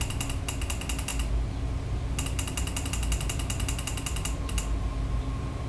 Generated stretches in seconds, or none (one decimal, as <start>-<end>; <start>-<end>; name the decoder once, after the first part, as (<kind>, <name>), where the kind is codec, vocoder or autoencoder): none